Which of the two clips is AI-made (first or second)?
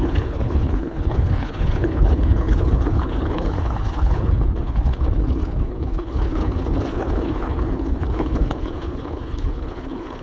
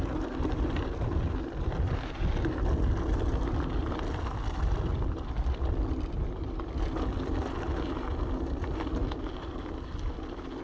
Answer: first